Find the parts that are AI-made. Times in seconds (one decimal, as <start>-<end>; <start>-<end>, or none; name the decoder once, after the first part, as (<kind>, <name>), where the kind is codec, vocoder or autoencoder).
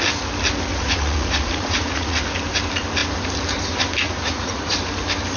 0.7-2.2 (vocoder, Vocos); 4.0-4.7